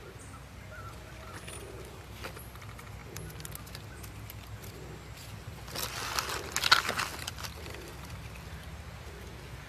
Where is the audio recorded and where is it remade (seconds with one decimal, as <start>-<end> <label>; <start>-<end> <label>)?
0.0-7.1 recorded; 7.1-7.9 remade; 7.9-9.7 recorded